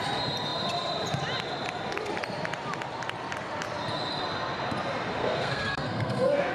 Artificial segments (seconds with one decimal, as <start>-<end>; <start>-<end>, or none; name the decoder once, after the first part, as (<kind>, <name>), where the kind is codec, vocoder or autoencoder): 5.2-6.5 (codec, SNAC)